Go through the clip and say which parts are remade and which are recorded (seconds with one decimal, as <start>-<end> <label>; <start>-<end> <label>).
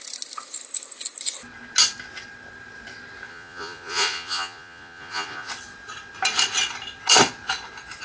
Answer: 0.0-3.3 recorded; 3.3-5.5 remade; 5.5-8.0 recorded